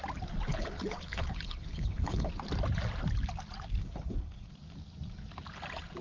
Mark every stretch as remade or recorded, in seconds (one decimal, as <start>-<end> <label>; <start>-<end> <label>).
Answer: 0.0-0.5 recorded; 0.5-2.3 remade; 2.3-3.8 recorded; 3.8-4.5 remade; 4.5-6.0 recorded